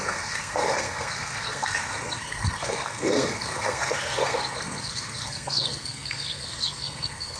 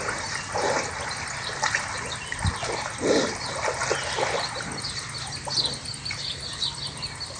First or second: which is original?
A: second